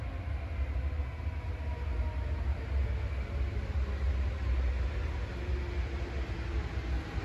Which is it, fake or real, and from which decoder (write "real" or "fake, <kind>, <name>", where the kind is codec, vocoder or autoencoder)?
real